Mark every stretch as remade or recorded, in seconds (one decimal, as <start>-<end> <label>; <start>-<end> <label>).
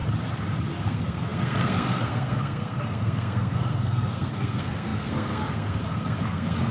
0.0-0.8 recorded; 0.8-6.7 remade